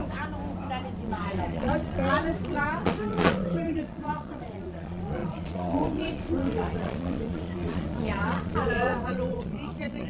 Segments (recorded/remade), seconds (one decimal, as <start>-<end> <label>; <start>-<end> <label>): 0.0-1.0 recorded; 1.0-10.1 remade